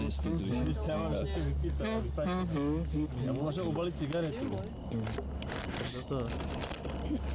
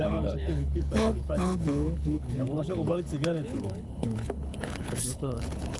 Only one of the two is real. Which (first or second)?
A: first